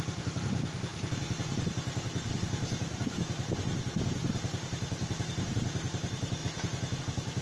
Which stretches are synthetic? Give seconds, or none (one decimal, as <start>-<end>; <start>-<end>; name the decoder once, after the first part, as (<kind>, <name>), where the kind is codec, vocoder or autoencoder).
none